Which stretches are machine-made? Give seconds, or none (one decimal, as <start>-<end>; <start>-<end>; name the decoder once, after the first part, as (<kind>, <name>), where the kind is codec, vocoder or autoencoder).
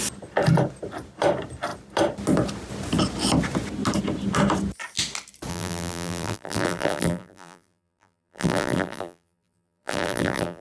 5.5-10.6 (vocoder, BigVGAN v2)